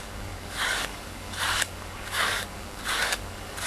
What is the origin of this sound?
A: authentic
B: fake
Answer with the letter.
B